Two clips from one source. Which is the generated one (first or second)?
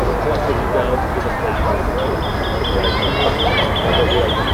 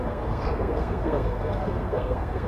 second